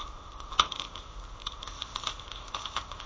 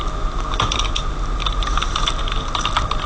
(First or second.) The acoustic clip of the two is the second